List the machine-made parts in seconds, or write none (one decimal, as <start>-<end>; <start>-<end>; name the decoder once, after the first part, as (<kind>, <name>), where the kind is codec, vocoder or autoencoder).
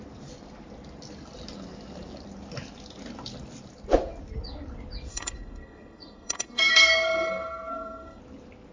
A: 5.1-8.2 (codec, SNAC)